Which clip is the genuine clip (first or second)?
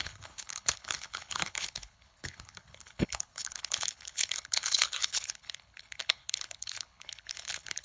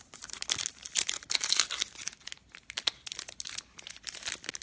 second